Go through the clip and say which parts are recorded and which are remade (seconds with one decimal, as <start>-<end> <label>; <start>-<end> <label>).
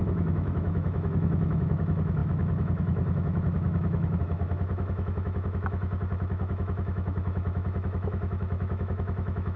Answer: 0.0-9.6 remade